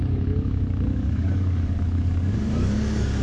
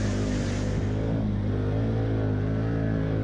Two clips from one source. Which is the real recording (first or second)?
second